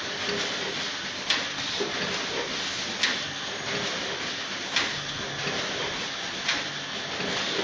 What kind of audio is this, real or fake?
real